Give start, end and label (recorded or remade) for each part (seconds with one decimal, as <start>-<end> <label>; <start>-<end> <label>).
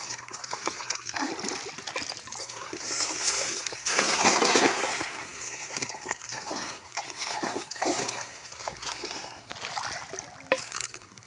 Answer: 0.0-1.3 remade; 1.3-2.4 recorded; 2.4-9.5 remade; 9.5-10.6 recorded; 10.6-11.3 remade